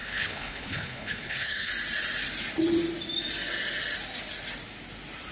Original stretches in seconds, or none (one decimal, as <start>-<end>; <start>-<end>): 1.7-5.3